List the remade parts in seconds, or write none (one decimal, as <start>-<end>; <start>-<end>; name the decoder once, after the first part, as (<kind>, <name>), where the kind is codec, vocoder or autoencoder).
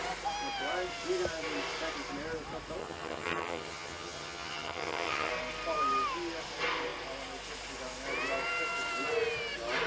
2.8-5.3 (vocoder, HiFi-GAN)